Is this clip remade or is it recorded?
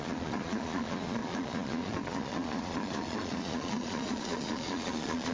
remade